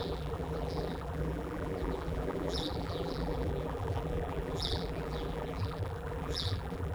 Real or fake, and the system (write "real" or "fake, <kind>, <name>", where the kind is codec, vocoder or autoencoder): fake, vocoder, BigVGAN v2